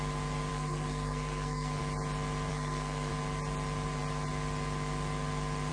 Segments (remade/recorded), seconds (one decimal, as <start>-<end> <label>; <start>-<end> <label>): 0.0-0.5 recorded; 0.5-1.8 remade; 1.8-2.5 recorded; 2.5-3.1 remade; 3.1-5.7 recorded